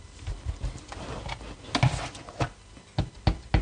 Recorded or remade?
recorded